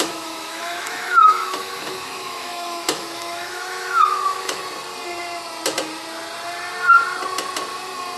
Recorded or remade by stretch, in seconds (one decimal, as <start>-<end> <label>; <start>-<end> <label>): 0.0-4.6 remade; 4.6-8.2 recorded

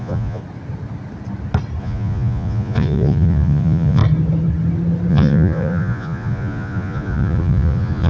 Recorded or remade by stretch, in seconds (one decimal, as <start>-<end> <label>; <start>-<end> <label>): 0.0-0.4 remade; 0.4-1.8 recorded; 1.8-4.0 remade; 4.0-5.1 recorded; 5.1-8.1 remade

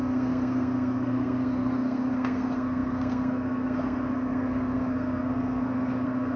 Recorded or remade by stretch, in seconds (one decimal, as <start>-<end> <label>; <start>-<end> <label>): 0.0-6.4 remade

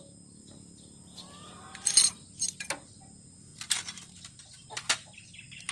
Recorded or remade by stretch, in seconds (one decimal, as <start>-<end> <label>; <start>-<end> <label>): 0.0-5.7 recorded